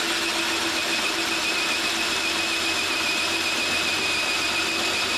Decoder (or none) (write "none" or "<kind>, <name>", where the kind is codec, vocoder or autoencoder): none